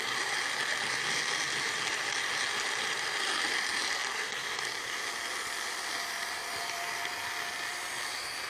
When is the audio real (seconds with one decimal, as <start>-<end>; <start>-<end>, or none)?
0.0-8.5